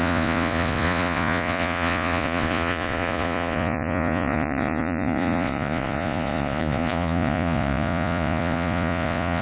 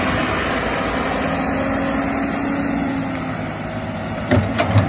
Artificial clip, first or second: first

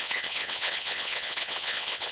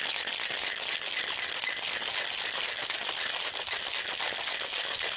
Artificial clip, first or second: first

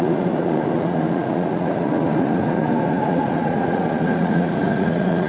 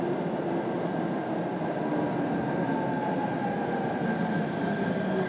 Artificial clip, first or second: first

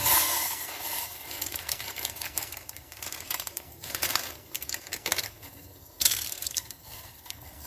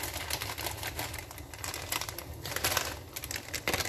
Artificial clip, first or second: first